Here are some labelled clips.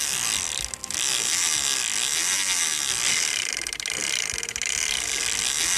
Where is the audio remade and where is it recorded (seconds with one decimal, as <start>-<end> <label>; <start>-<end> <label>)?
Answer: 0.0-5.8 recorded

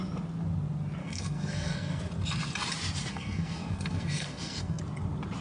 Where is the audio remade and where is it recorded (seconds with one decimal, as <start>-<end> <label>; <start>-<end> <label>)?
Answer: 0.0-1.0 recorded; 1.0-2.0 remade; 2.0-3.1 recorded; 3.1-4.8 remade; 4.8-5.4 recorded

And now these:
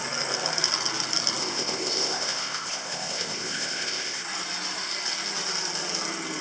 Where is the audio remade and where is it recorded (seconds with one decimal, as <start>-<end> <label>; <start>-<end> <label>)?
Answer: 0.0-1.4 recorded; 1.4-4.2 remade; 4.2-6.4 recorded

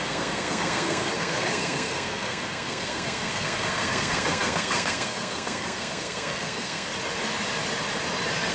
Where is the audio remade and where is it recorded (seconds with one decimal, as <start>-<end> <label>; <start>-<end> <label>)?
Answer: 0.0-6.9 remade; 6.9-8.5 recorded

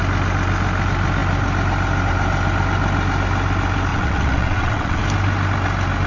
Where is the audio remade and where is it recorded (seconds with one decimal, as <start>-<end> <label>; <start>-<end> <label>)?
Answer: 0.0-3.9 recorded; 3.9-5.0 remade; 5.0-6.1 recorded

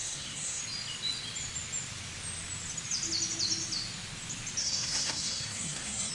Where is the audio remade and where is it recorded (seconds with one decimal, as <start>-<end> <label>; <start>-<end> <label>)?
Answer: 0.0-0.6 remade; 0.6-4.6 recorded; 4.6-6.1 remade

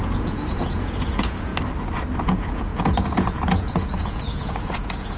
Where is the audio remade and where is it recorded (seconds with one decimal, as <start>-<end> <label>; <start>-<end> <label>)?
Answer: 0.0-1.5 remade; 1.5-2.2 recorded; 2.2-5.2 remade